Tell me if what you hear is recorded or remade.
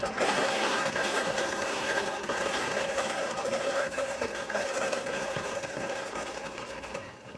remade